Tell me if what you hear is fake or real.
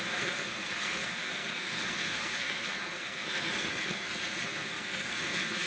fake